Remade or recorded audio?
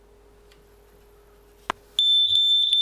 recorded